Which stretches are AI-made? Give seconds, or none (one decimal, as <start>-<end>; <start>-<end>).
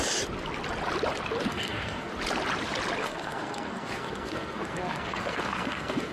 1.5-2.1; 3.0-6.1